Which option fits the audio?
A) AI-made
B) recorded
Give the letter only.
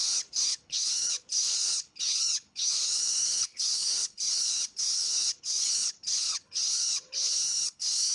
A